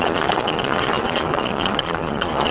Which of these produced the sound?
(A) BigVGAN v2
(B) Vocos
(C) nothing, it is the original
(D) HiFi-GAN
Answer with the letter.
B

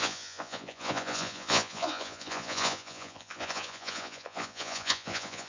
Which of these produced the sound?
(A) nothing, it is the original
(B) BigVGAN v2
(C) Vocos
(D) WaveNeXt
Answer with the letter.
C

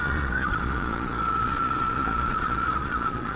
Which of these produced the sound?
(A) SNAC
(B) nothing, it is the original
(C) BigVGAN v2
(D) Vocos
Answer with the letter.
D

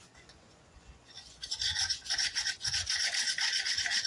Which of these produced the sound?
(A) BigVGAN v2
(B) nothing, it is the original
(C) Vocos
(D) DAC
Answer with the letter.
C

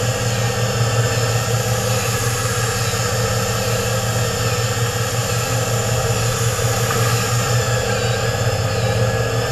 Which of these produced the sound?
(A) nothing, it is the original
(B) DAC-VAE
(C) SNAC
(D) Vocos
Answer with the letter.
A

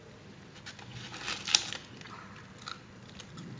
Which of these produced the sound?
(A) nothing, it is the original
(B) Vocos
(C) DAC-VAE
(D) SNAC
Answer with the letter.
A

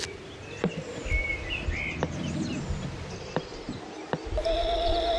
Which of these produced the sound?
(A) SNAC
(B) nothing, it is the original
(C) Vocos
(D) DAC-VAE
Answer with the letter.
B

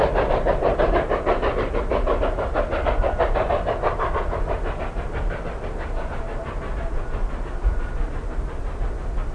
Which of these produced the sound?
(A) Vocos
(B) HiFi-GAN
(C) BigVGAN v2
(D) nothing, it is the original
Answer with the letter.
D